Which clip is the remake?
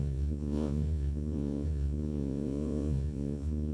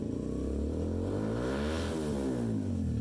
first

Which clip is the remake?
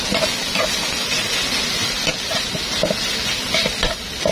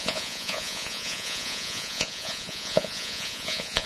second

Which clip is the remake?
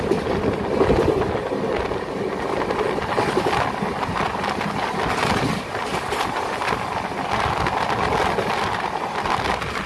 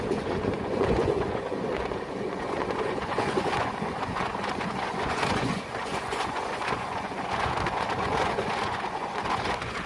second